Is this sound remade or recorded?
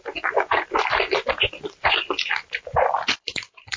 remade